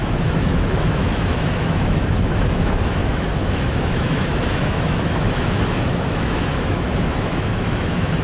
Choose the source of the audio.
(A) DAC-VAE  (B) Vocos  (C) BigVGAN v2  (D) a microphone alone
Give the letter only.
A